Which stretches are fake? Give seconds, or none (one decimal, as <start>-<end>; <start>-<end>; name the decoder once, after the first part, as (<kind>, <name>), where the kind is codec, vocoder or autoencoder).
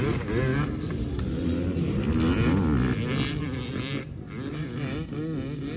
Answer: none